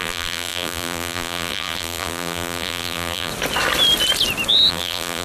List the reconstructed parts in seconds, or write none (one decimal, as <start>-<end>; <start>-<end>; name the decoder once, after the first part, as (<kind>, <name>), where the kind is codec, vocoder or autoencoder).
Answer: 0.0-3.3 (vocoder, BigVGAN v2); 4.7-5.2